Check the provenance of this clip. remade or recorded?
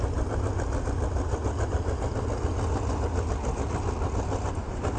recorded